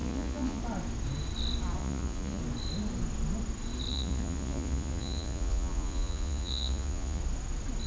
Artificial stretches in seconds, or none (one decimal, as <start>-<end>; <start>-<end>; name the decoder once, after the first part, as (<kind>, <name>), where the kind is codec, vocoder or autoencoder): 0.0-0.6 (vocoder, Vocos); 1.8-2.4; 3.9-7.2